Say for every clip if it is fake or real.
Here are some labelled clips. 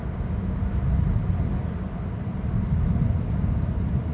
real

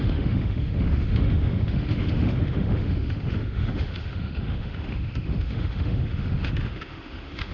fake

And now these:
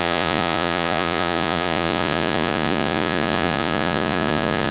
fake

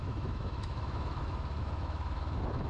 fake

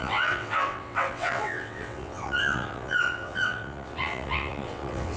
fake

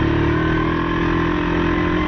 real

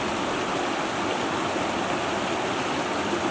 real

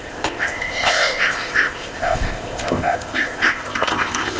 fake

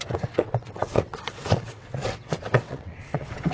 fake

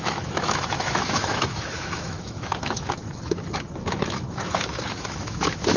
fake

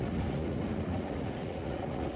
fake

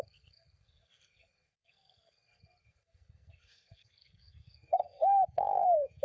fake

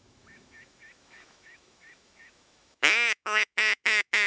fake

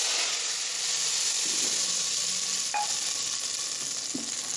real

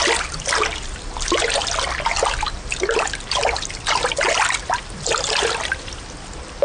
real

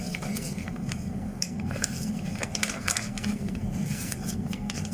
fake